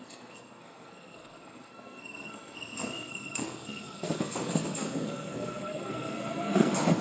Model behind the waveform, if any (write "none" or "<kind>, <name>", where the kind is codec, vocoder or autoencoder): codec, SNAC